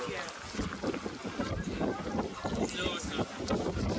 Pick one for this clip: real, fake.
real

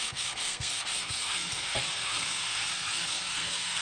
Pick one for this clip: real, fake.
fake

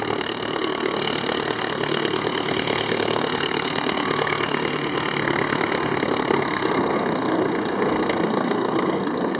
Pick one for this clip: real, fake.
fake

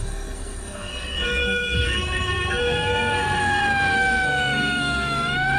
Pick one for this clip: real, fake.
fake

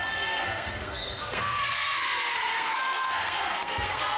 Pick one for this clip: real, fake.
fake